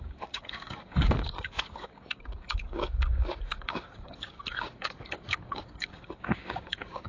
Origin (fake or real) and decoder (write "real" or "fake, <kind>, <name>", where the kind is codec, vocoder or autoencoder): fake, codec, DAC